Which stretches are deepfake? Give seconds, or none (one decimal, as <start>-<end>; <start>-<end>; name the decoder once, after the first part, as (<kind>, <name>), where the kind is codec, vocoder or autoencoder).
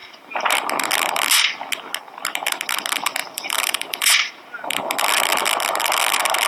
3.2-4.3 (vocoder, BigVGAN v2)